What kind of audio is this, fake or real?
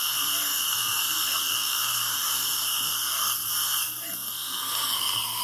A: fake